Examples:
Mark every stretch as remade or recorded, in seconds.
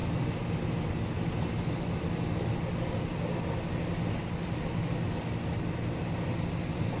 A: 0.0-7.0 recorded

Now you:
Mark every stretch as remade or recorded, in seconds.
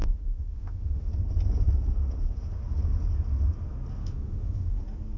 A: 0.0-1.1 remade; 1.1-4.0 recorded; 4.0-4.8 remade; 4.8-5.2 recorded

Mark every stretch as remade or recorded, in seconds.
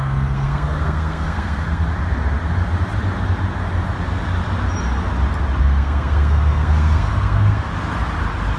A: 0.0-1.8 remade; 1.8-5.6 recorded; 5.6-7.7 remade; 7.7-8.6 recorded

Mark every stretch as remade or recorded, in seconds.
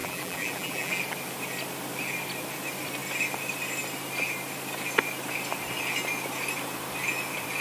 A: 0.0-1.0 remade; 1.0-7.6 recorded